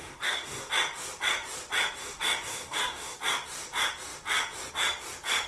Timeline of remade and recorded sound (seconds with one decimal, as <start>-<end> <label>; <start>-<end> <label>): 0.0-0.7 remade; 0.7-2.0 recorded; 2.0-3.2 remade; 3.2-5.5 recorded